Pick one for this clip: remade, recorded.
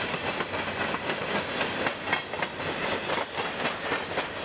recorded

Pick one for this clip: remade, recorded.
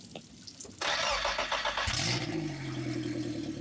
recorded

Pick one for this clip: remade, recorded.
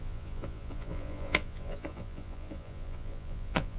remade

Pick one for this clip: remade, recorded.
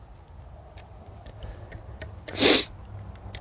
recorded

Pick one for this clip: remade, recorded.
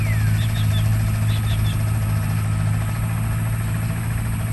recorded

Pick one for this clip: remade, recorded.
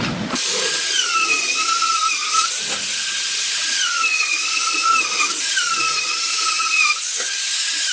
remade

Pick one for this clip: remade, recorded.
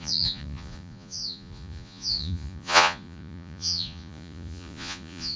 remade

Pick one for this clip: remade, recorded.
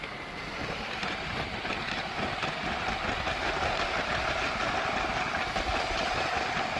recorded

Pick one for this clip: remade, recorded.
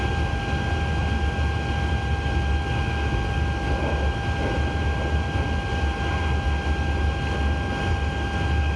recorded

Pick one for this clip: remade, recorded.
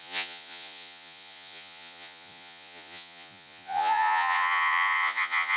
remade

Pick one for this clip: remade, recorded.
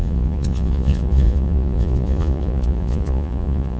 remade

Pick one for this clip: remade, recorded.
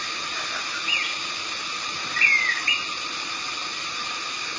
recorded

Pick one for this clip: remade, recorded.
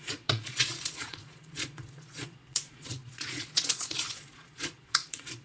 remade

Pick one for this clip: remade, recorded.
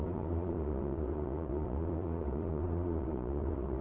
remade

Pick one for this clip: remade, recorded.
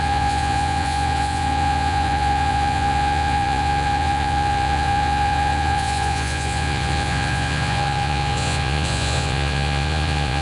remade